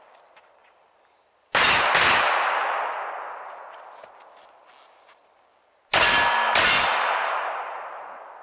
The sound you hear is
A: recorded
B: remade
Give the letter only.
A